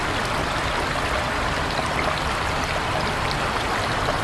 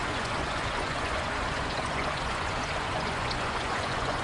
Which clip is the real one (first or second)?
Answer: first